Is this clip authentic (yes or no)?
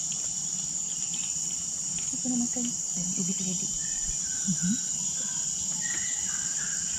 yes